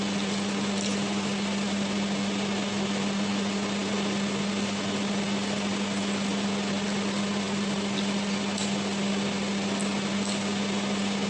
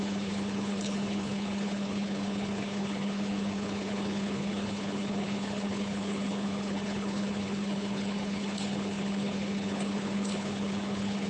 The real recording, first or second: first